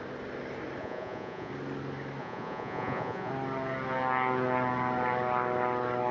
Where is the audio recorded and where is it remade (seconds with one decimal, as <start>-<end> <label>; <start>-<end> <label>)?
0.0-0.8 recorded; 0.8-1.5 remade; 1.5-2.2 recorded; 2.2-3.3 remade; 3.3-6.1 recorded